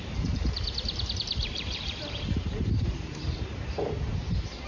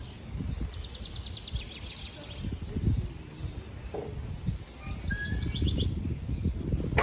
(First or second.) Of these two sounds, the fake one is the first